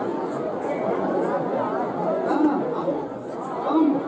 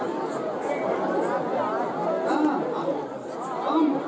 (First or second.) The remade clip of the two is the first